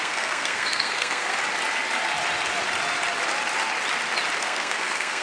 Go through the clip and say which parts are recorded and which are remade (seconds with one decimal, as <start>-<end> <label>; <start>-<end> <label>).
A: 0.0-1.3 remade; 1.3-4.4 recorded; 4.4-5.2 remade